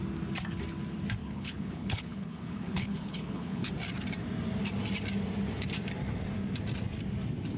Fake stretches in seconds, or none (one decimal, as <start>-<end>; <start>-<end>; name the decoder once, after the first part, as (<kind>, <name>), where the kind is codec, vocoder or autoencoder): 1.2-3.7 (codec, HILCodec)